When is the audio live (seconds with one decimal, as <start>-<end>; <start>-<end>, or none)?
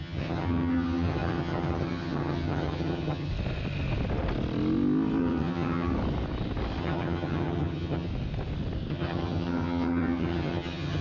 3.3-5.2; 5.9-6.8; 8.1-8.9